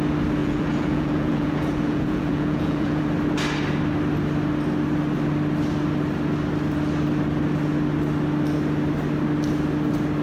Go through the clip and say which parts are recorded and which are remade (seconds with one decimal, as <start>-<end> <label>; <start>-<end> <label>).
0.0-0.4 recorded; 0.4-3.0 remade; 3.0-10.2 recorded

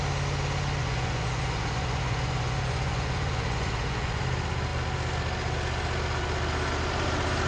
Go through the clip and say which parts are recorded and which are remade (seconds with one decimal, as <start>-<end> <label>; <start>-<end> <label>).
0.0-0.8 recorded; 0.8-4.2 remade; 4.2-7.5 recorded

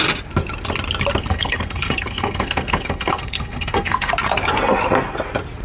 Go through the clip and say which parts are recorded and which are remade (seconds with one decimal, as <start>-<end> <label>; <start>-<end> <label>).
0.0-1.2 recorded; 1.2-4.1 remade; 4.1-5.6 recorded

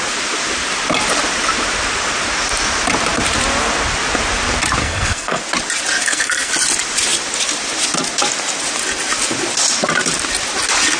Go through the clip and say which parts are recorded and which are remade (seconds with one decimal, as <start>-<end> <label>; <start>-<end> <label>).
0.0-4.8 recorded; 4.8-5.4 remade; 5.4-6.0 recorded; 6.0-6.5 remade; 6.5-11.0 recorded